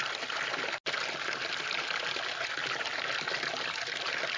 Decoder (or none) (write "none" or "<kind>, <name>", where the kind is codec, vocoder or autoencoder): none